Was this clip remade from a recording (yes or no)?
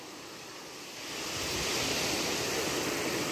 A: no